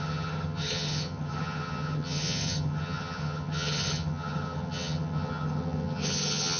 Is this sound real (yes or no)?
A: no